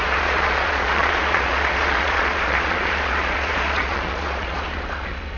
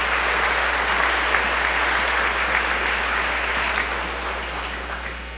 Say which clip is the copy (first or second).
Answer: first